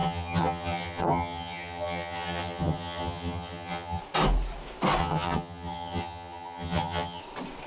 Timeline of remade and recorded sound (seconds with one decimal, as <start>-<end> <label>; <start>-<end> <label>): 0.0-4.0 remade; 4.0-5.0 recorded; 5.0-7.2 remade; 7.2-7.7 recorded